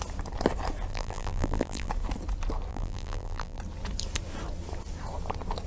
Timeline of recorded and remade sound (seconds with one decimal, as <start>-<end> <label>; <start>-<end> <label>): 0.0-0.9 recorded; 0.9-1.9 remade; 1.9-2.7 recorded; 2.7-3.6 remade; 3.6-5.7 recorded